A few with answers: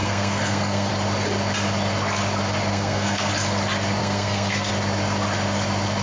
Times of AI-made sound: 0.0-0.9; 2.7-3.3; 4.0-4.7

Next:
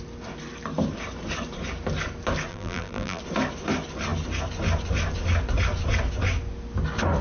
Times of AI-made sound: 2.5-3.2

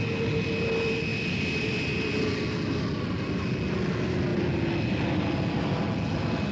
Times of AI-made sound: 1.1-2.1

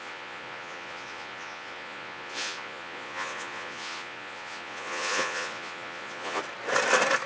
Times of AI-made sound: 0.0-6.4